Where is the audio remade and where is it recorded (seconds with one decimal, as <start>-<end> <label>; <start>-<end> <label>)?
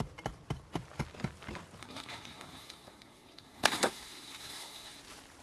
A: 0.0-1.8 recorded; 1.8-5.0 remade; 5.0-5.4 recorded